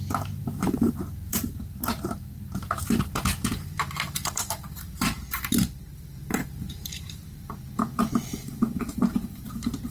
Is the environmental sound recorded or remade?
remade